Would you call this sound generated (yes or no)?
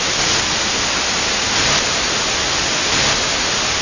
no